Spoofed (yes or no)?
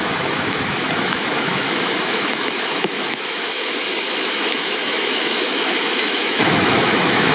yes